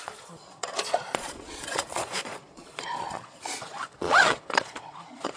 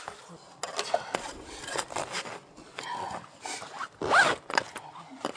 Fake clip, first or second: first